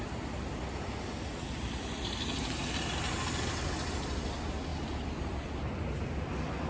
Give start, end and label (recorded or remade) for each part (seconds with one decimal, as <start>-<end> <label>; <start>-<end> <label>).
0.0-6.7 recorded